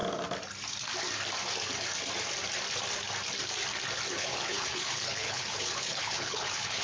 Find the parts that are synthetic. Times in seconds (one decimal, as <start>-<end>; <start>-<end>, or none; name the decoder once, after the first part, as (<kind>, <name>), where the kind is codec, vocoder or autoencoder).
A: 4.1-6.8 (codec, HILCodec)